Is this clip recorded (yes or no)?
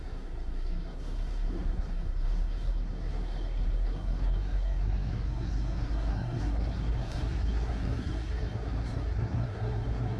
no